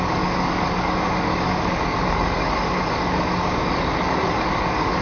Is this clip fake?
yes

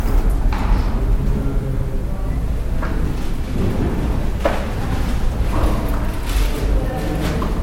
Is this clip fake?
no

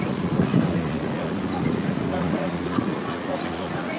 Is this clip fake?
yes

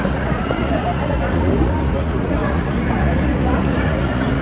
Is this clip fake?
yes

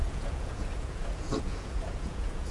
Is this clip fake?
yes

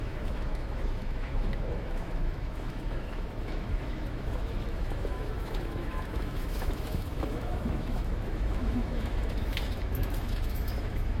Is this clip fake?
yes